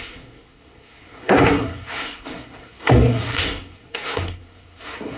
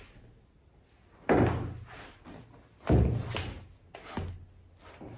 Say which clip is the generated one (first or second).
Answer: first